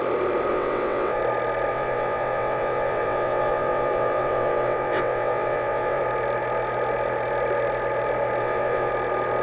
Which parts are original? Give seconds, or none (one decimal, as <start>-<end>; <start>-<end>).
0.0-0.5; 1.2-1.7; 6.0-8.4; 8.9-9.4